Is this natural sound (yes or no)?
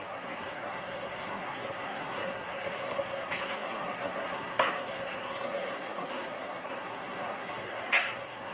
no